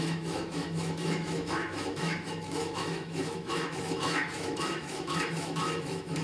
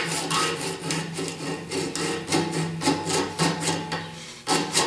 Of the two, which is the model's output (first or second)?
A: first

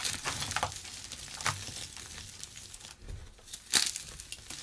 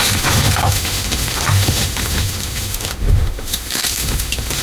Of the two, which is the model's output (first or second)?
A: second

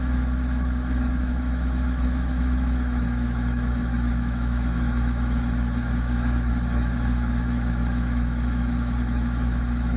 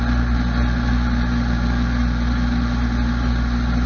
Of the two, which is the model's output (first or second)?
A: first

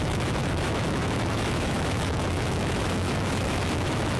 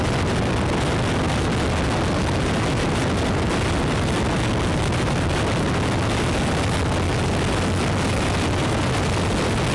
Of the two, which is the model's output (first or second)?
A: first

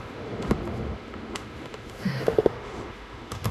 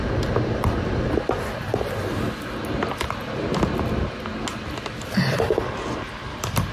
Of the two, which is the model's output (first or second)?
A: first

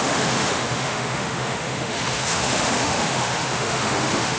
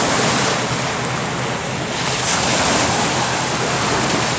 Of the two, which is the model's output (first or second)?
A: first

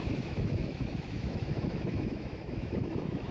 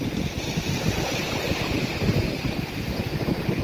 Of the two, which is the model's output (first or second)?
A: first